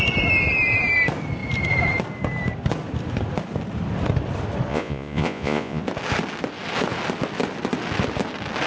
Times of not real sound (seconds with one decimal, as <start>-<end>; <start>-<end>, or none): 4.7-5.8